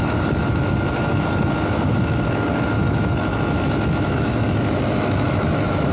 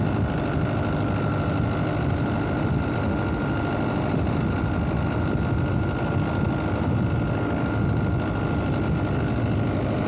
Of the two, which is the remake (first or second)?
first